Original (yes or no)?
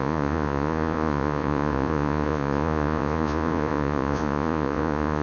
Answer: no